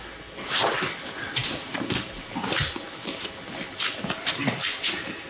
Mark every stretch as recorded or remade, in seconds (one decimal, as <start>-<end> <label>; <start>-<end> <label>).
0.0-5.3 recorded